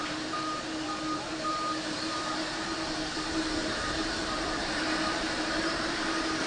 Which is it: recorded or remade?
remade